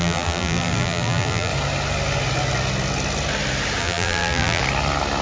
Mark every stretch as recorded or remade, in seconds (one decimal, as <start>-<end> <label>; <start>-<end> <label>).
0.0-1.5 remade; 1.5-3.8 recorded; 3.8-4.6 remade; 4.6-5.2 recorded